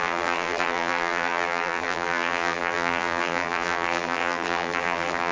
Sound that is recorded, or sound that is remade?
remade